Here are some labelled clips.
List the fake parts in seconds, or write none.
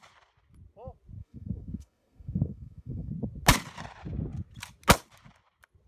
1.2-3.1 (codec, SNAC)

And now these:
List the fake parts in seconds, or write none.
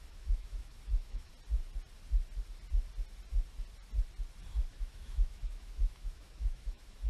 0.0-1.3 (autoencoder, DAC-VAE); 4.7-7.1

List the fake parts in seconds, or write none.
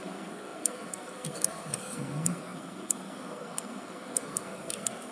0.0-5.1 (codec, SNAC)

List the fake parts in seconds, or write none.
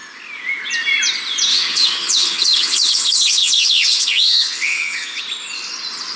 1.5-5.2 (vocoder, HiFi-GAN)